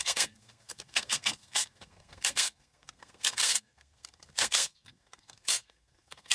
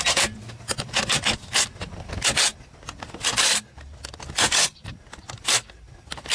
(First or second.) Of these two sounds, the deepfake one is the first